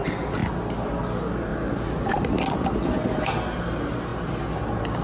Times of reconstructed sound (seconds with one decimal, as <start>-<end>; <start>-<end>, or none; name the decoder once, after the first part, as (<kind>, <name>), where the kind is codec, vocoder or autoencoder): none